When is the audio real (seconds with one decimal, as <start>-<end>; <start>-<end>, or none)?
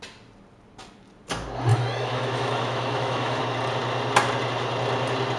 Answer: 0.0-1.7; 3.4-5.4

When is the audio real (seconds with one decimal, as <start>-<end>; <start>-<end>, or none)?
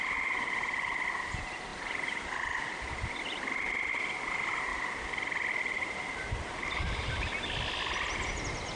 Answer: 0.0-1.7; 3.9-4.7; 8.4-8.8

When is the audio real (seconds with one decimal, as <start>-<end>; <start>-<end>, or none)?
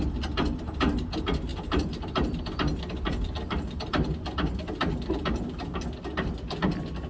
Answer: 0.0-7.1